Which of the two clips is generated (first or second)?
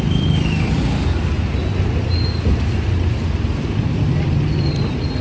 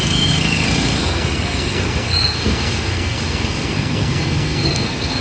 second